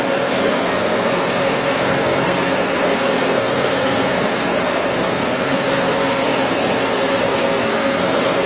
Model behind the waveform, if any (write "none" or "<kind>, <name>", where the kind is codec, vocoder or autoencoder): codec, SNAC